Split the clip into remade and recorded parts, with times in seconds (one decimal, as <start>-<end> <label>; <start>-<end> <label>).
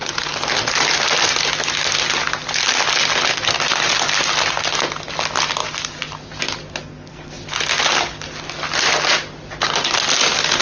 0.0-6.8 recorded; 6.8-7.4 remade; 7.4-10.6 recorded